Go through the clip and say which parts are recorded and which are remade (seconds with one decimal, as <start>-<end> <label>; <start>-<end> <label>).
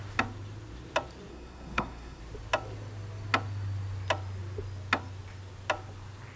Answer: 0.0-1.3 recorded; 1.3-2.2 remade; 2.2-6.4 recorded